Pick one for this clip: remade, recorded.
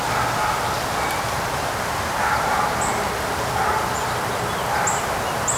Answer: recorded